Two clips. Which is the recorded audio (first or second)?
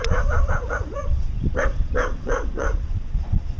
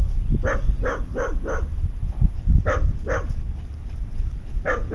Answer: second